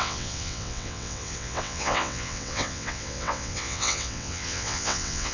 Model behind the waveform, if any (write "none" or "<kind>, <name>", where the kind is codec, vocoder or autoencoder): vocoder, WaveNeXt